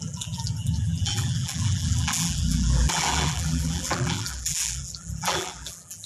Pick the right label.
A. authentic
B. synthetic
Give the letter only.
B